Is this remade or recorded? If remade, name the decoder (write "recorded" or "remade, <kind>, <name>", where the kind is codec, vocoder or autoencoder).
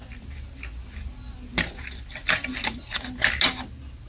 recorded